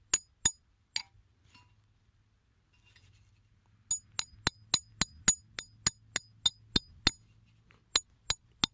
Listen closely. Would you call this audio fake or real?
real